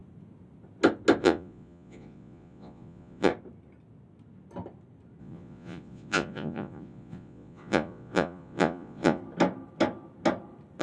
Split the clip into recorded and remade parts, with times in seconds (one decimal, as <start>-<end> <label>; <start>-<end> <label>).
0.0-1.2 recorded; 1.2-3.3 remade; 3.3-5.2 recorded; 5.2-9.2 remade; 9.2-10.8 recorded